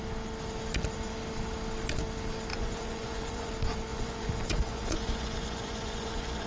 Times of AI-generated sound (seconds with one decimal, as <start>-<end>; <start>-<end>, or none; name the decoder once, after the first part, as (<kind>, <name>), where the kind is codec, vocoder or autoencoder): 2.5-3.5 (vocoder, Vocos); 3.9-6.5